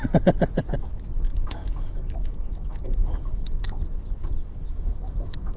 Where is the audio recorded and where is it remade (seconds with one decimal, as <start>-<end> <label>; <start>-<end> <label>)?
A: 0.0-1.3 recorded; 1.3-3.6 remade; 3.6-4.6 recorded; 4.6-5.6 remade